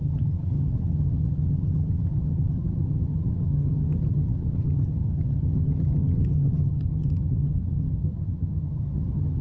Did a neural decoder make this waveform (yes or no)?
yes